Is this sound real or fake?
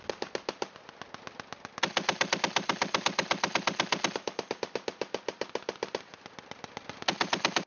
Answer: real